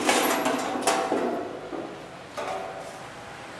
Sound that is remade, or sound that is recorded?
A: recorded